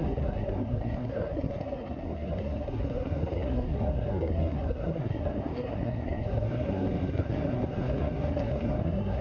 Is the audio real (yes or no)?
no